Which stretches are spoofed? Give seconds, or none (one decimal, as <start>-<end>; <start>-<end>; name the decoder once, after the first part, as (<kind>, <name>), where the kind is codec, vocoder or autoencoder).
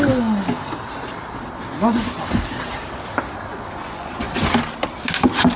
3.5-4.3 (vocoder, Vocos)